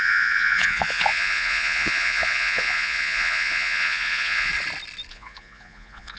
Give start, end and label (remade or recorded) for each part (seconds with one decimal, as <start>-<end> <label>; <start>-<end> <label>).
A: 0.0-4.5 remade; 4.5-5.1 recorded; 5.1-6.2 remade